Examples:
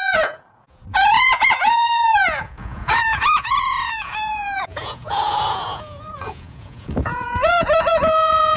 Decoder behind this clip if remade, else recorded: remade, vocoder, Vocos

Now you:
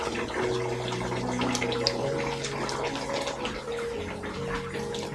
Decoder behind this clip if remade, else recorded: recorded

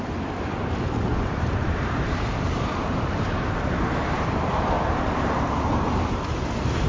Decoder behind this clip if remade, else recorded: remade, vocoder, BigVGAN v2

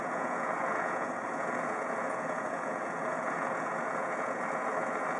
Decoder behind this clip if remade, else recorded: remade, vocoder, Vocos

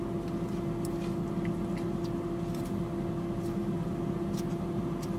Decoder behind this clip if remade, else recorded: recorded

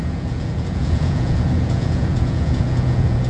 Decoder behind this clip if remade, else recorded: remade, vocoder, Vocos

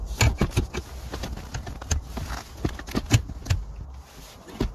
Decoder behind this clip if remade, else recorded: recorded